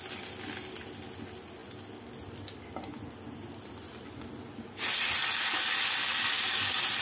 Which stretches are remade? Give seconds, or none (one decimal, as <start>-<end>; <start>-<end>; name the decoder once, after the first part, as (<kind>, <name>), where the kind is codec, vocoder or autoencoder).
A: none